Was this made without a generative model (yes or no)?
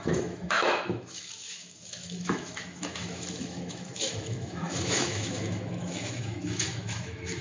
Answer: no